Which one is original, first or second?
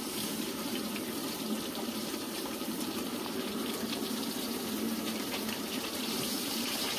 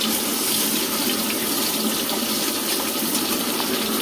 second